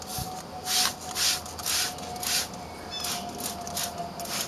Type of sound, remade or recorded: recorded